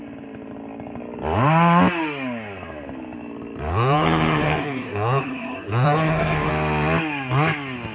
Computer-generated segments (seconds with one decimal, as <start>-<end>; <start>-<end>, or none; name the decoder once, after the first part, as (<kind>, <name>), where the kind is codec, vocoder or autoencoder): 3.7-6.5 (codec, SNAC)